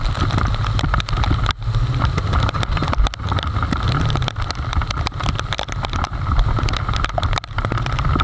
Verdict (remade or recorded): recorded